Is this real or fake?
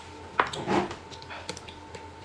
real